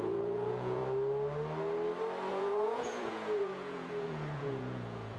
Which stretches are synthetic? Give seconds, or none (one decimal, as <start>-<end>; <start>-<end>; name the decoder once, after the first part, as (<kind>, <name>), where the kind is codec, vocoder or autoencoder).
0.0-0.8 (vocoder, Vocos); 2.3-5.2